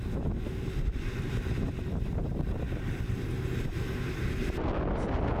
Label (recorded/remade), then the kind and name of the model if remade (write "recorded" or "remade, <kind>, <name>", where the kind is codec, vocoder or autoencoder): recorded